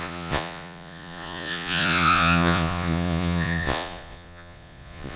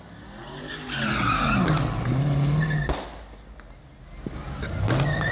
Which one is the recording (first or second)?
second